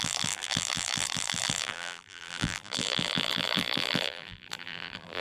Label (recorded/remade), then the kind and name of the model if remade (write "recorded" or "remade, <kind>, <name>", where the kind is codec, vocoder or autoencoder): remade, vocoder, BigVGAN v2